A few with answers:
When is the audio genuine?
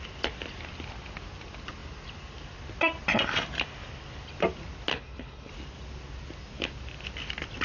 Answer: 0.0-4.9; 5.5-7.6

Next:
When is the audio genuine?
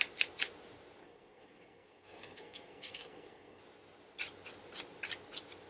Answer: 0.0-1.0; 3.6-5.7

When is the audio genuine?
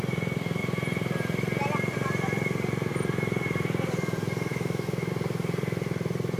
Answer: 0.0-4.5; 5.1-6.4